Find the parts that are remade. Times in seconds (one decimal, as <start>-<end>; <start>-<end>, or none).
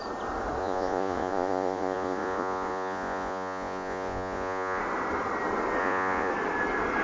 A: 0.6-4.8; 5.8-6.3